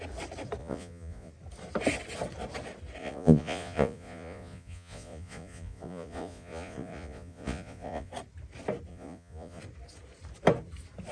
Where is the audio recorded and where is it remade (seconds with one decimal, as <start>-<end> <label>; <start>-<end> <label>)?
0.0-0.6 recorded; 0.6-1.3 remade; 1.3-3.0 recorded; 3.0-8.1 remade; 8.1-8.9 recorded; 8.9-9.6 remade; 9.6-11.1 recorded